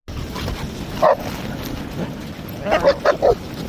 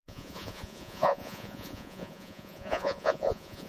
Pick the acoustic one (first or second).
first